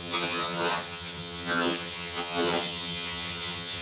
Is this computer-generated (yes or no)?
yes